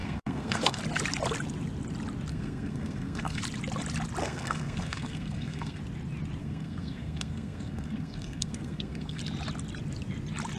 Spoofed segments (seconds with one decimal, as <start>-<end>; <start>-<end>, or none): 0.0-0.8; 2.3-3.4; 4.2-5.8; 6.4-9.2